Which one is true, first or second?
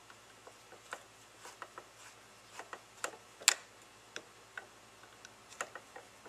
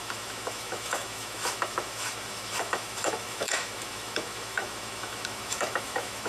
first